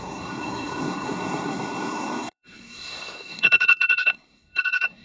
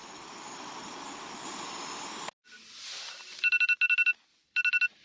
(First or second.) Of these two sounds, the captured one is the second